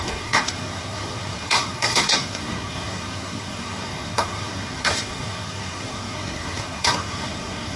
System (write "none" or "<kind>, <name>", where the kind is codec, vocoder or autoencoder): codec, SNAC